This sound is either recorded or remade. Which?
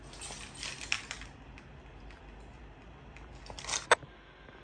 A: recorded